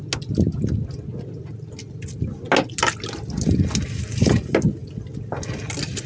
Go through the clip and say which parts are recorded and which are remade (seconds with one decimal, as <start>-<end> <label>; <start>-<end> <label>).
0.0-6.1 recorded